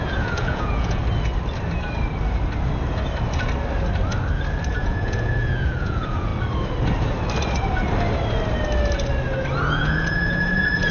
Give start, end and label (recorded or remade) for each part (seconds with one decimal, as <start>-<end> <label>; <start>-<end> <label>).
0.0-1.0 remade; 1.0-4.7 recorded; 4.7-6.3 remade; 6.3-9.7 recorded; 9.7-10.9 remade